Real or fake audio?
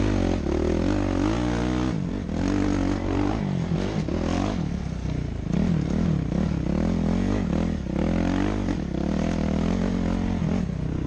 real